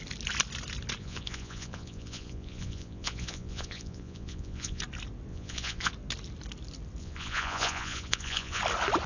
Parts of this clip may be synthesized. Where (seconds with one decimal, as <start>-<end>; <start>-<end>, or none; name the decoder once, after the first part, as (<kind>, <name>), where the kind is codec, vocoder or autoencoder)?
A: 1.0-4.8 (vocoder, Vocos); 5.3-5.9; 7.0-8.6